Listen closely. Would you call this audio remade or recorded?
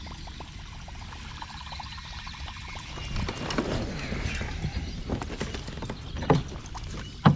recorded